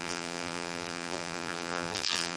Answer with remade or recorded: remade